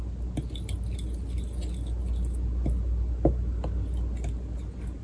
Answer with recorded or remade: recorded